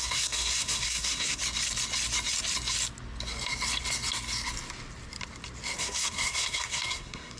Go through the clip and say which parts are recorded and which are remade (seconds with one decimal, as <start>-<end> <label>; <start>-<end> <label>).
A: 0.0-1.4 remade; 1.4-5.8 recorded; 5.8-7.4 remade